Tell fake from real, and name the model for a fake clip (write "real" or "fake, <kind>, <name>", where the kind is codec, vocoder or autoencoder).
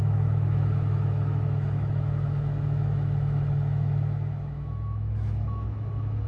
fake, autoencoder, DAC-VAE